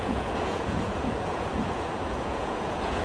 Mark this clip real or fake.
fake